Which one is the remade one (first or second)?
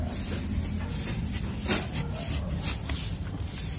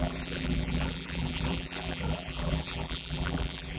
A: second